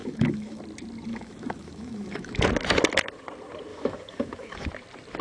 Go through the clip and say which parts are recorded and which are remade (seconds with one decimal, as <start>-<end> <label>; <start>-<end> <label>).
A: 0.0-0.6 remade; 0.6-1.1 recorded; 1.1-2.5 remade; 2.5-3.7 recorded; 3.7-4.7 remade; 4.7-5.2 recorded